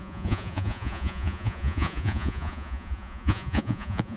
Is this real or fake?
fake